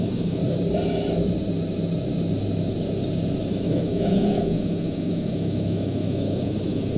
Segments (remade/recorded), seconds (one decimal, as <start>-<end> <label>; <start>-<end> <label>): 0.0-0.4 remade; 0.4-3.5 recorded; 3.5-7.0 remade